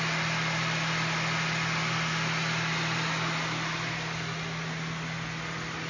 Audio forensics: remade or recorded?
recorded